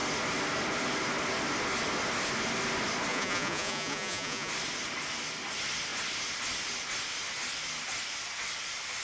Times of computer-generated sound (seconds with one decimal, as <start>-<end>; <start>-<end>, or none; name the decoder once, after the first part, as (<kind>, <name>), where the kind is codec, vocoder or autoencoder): 3.1-4.5 (vocoder, Vocos)